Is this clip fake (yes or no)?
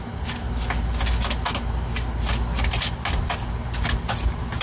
no